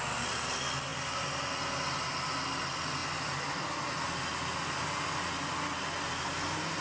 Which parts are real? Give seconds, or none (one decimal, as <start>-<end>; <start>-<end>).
0.0-6.8